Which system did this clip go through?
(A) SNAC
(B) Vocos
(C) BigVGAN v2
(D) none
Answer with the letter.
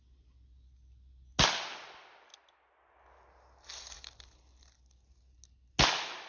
D